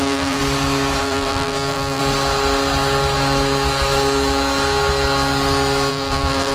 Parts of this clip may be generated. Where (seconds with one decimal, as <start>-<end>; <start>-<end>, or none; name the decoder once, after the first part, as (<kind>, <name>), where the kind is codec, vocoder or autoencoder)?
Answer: 0.0-0.4 (vocoder, BigVGAN v2); 1.0-2.0; 5.9-6.5